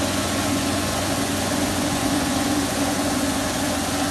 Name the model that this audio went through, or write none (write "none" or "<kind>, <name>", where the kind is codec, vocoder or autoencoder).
vocoder, Vocos